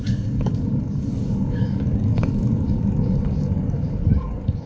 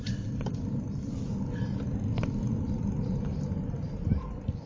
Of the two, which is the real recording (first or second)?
second